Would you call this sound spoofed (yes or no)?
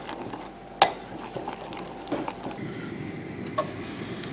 no